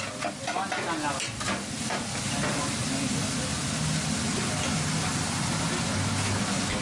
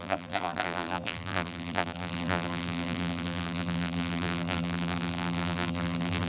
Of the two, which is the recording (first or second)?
first